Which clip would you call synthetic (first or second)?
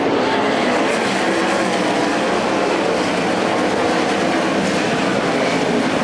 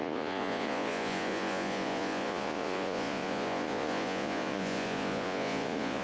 second